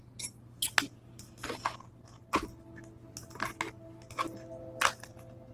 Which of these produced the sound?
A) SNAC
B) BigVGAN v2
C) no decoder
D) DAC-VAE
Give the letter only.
C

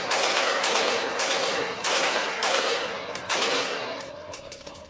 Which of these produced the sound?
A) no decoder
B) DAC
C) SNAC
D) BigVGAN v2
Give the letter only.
C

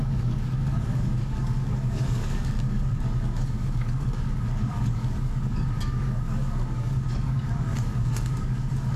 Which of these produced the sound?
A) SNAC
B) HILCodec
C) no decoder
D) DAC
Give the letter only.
D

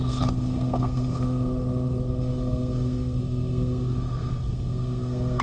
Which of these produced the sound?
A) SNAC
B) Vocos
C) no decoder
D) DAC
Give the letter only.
A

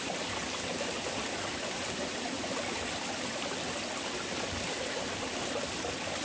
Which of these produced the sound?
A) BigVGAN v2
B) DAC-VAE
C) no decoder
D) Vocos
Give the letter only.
C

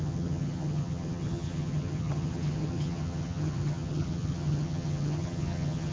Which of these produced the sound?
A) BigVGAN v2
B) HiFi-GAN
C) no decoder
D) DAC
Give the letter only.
B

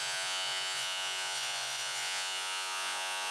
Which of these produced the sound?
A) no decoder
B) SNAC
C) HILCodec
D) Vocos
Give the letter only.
D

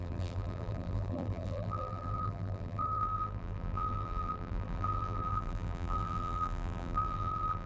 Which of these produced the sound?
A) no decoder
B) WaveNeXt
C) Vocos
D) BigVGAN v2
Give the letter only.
D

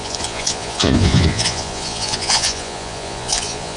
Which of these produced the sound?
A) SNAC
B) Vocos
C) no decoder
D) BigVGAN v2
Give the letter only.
B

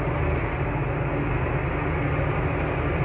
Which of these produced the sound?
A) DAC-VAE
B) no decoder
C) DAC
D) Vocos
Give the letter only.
B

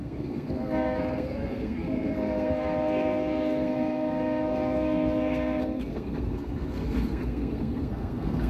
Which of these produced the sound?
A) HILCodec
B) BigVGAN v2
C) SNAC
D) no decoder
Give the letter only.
C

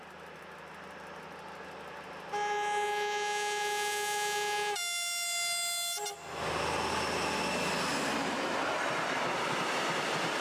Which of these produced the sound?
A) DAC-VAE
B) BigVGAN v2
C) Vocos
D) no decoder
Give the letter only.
D